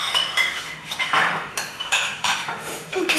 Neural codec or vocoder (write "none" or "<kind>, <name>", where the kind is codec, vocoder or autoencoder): autoencoder, DAC-VAE